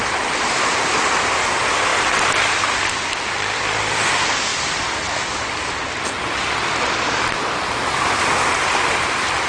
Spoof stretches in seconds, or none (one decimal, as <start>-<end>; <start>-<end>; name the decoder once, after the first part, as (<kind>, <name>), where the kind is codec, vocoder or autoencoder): 0.0-1.9 (vocoder, BigVGAN v2); 2.8-4.5; 6.9-9.5